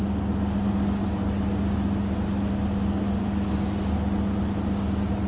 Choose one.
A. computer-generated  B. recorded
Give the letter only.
B